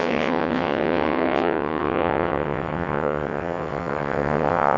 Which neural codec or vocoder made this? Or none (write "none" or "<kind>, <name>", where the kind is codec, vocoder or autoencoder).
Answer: vocoder, WaveNeXt